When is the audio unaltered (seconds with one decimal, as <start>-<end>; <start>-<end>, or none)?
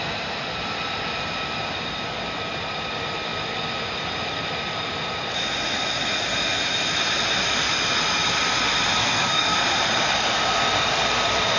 0.0-9.0; 9.6-11.6